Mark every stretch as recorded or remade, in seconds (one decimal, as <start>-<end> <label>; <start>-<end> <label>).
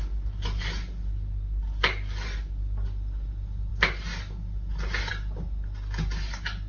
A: 0.0-6.7 recorded